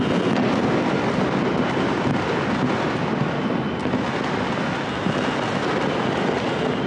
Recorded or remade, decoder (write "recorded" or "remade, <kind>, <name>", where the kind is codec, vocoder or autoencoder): recorded